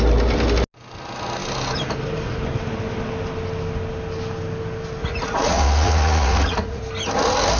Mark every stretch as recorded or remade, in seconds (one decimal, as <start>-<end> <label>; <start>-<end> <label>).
0.0-5.0 recorded; 5.0-6.8 remade; 6.8-7.6 recorded